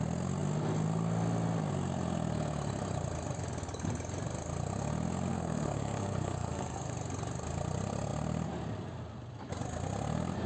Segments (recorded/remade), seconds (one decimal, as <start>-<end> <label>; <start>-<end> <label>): 0.0-5.3 recorded; 5.3-6.9 remade; 6.9-10.5 recorded